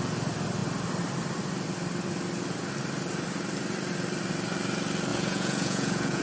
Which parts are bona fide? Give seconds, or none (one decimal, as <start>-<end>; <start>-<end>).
0.0-5.1